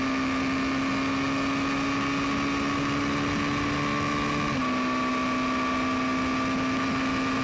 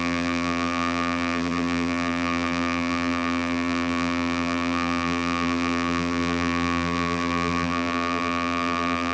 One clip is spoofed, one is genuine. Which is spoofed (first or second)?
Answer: second